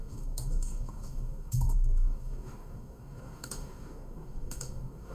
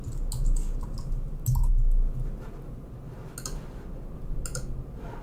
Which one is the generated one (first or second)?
first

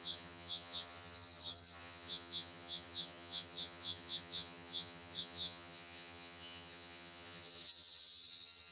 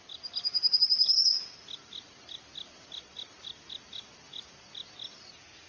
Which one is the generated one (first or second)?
first